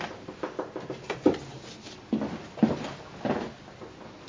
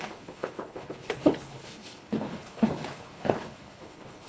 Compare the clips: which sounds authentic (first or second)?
first